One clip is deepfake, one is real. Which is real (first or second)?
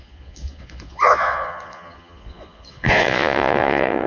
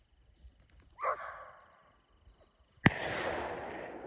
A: second